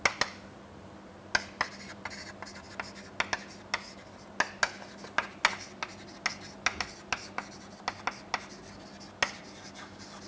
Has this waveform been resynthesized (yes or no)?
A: no